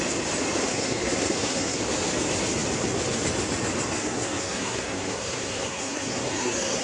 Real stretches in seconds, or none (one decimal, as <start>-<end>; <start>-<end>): 0.0-0.7; 1.8-4.0